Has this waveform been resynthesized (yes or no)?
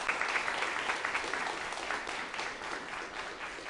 no